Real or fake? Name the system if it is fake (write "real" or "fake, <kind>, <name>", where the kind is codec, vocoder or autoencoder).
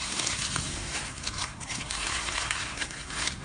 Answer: fake, codec, SNAC